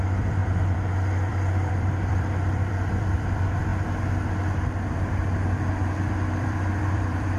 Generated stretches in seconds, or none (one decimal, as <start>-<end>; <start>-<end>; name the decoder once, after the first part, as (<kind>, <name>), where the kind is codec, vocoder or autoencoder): 0.0-3.7 (vocoder, BigVGAN v2); 5.7-7.4